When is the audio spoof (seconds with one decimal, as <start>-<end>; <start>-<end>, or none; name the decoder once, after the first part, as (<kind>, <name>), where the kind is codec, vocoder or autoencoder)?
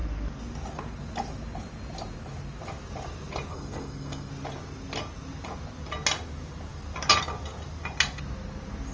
3.5-4.3 (codec, SNAC)